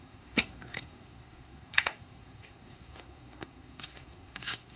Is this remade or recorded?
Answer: remade